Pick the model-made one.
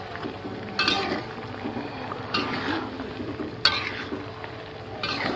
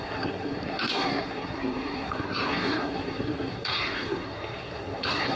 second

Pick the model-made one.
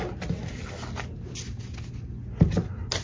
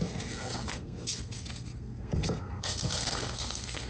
second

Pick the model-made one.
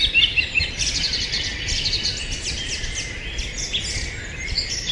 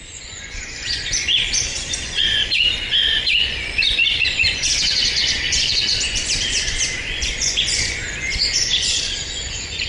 second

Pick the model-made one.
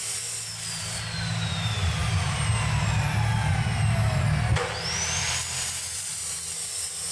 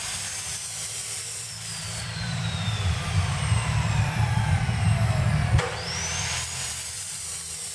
second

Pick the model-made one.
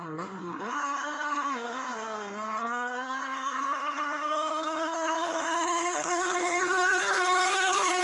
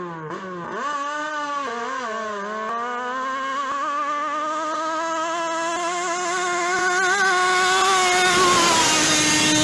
first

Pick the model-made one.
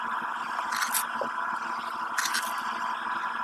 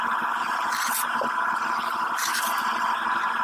second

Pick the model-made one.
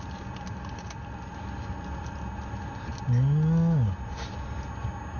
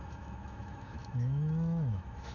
second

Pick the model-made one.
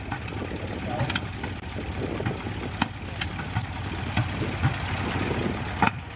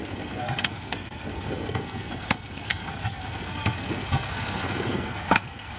second